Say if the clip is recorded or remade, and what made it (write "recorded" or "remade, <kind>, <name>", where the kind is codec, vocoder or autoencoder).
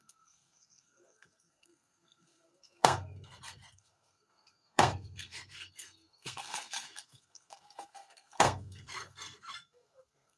remade, codec, SNAC